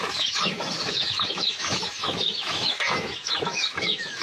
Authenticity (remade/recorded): remade